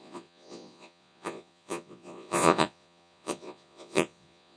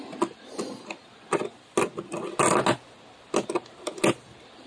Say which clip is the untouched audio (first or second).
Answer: second